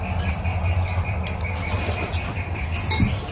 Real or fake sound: real